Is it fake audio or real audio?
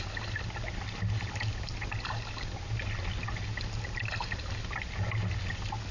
real